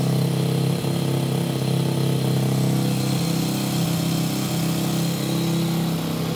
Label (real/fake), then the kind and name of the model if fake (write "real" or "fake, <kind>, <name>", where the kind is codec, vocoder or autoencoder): real